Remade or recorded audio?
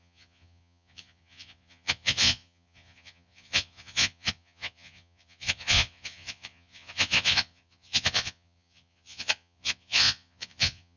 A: remade